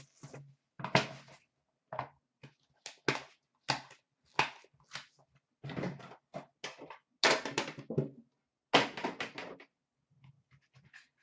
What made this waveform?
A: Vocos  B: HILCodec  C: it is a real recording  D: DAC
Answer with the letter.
C